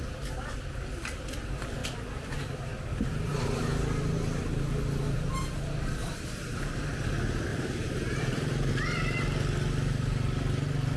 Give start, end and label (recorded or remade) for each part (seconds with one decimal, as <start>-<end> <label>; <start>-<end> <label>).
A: 0.0-6.0 recorded; 6.0-6.8 remade; 6.8-7.5 recorded; 7.5-8.7 remade; 8.7-11.0 recorded